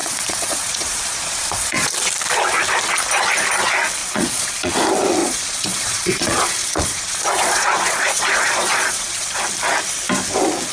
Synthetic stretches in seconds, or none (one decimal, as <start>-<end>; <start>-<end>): 0.0-1.9; 4.0-4.7; 5.2-9.4